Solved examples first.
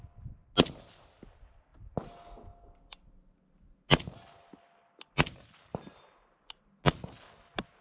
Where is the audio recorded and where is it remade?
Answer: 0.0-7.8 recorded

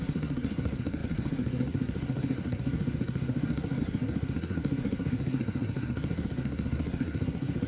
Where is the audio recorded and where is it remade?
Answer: 0.0-7.7 remade

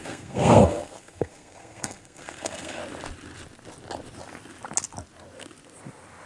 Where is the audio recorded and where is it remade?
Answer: 0.0-2.8 remade; 2.8-6.3 recorded

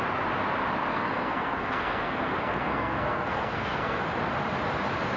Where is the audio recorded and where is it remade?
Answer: 0.0-0.9 recorded; 0.9-4.0 remade; 4.0-5.2 recorded

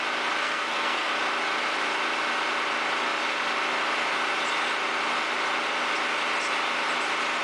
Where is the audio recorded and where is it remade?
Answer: 0.0-0.4 recorded; 0.4-1.1 remade; 1.1-7.4 recorded

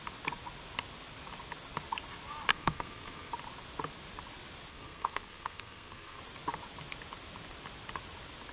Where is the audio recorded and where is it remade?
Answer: 0.0-2.5 recorded; 2.5-3.3 remade; 3.3-4.7 recorded; 4.7-6.2 remade; 6.2-8.5 recorded